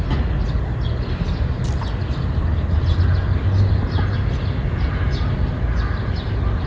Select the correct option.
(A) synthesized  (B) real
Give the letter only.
B